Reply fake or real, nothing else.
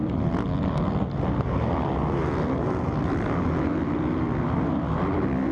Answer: real